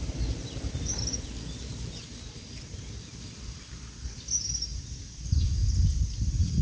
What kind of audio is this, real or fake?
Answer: real